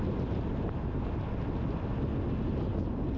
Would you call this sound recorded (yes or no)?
yes